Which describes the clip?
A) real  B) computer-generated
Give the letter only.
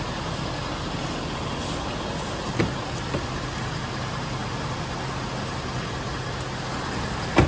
A